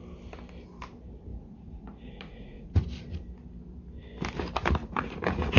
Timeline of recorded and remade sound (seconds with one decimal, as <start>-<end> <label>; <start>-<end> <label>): 0.0-1.3 recorded; 1.3-3.0 remade; 3.0-4.8 recorded; 4.8-5.6 remade